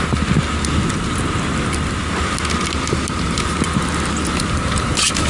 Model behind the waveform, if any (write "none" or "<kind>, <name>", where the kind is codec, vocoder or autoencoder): none